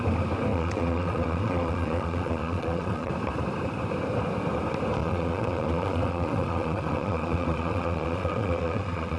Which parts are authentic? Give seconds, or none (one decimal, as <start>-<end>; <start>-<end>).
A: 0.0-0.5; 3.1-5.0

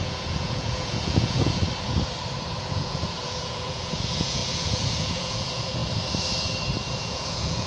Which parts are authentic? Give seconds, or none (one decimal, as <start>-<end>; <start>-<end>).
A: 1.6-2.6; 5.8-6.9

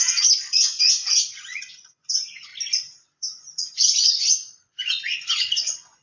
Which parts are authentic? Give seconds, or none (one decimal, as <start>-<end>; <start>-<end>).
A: 2.5-3.0

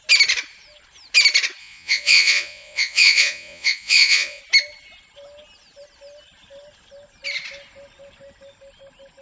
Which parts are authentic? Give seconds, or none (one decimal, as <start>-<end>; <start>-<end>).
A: 0.0-1.6; 4.4-9.2

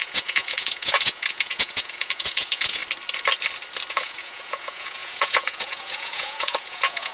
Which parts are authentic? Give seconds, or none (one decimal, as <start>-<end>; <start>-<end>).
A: 2.8-3.9

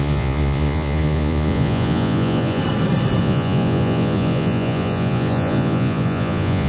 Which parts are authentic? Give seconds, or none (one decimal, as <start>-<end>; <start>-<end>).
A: 2.6-3.2

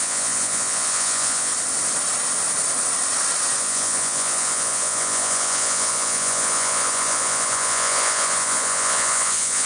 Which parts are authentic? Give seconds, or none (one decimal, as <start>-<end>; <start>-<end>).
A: 1.5-3.6

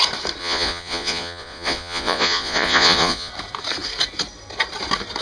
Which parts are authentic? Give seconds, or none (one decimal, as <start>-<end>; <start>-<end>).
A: 0.0-0.4; 3.3-5.2